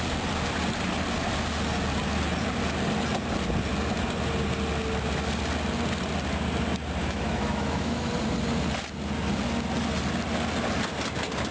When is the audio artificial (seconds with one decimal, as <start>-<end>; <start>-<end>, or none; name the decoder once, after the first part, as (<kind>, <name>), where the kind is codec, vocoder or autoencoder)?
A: 7.0-8.1 (autoencoder, DAC-VAE)